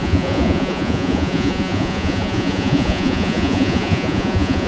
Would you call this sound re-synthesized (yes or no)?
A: yes